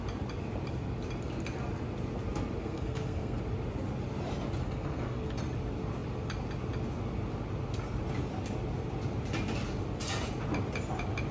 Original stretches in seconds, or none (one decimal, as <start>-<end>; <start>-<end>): 0.0-2.6; 3.4-4.6; 5.4-11.3